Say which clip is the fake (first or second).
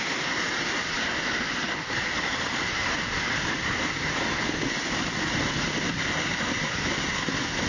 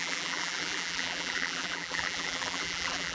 second